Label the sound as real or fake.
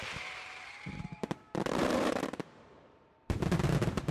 fake